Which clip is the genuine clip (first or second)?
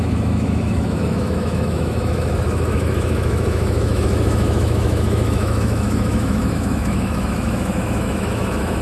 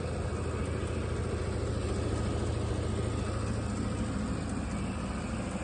second